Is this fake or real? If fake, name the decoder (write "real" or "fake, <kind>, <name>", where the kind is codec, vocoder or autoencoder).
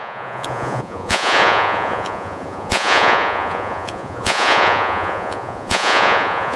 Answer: fake, vocoder, Vocos